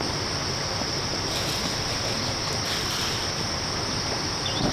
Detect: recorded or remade recorded